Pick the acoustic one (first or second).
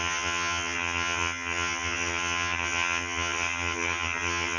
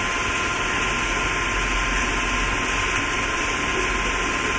second